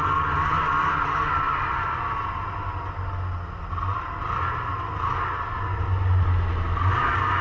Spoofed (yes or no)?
no